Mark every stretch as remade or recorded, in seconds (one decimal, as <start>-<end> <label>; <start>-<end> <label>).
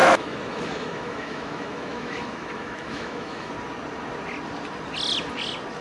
0.0-3.5 remade; 3.5-5.8 recorded